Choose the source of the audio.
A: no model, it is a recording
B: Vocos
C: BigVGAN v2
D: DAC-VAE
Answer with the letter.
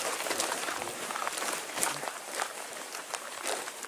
C